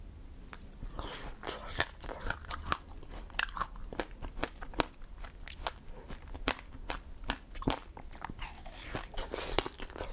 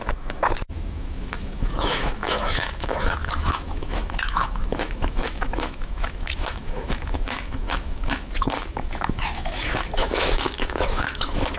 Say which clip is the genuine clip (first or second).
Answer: first